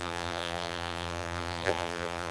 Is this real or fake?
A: fake